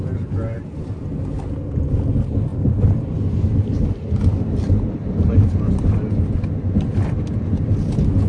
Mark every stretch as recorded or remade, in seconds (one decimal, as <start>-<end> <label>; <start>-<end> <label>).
0.0-8.3 recorded